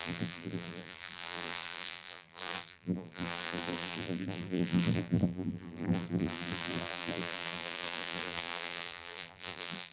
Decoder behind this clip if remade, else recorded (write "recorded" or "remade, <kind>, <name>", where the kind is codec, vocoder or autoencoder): remade, vocoder, BigVGAN v2